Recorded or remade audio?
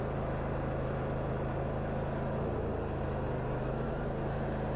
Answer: recorded